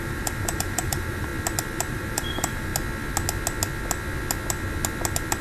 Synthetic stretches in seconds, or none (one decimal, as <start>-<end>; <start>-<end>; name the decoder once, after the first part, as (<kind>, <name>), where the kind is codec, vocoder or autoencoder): 0.0-1.3 (vocoder, BigVGAN v2); 1.9-2.7